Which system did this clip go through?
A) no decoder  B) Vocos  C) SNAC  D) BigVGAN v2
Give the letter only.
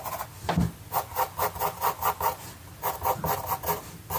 A